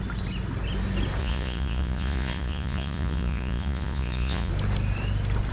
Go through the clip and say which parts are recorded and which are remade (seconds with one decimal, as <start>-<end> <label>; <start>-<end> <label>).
0.0-1.2 recorded; 1.2-4.5 remade; 4.5-5.5 recorded